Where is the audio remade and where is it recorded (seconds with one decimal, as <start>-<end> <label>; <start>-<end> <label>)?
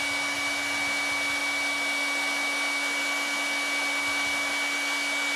0.0-5.4 recorded